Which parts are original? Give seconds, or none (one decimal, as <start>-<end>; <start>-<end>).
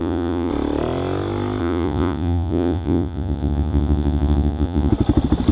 0.5-1.6; 4.9-5.5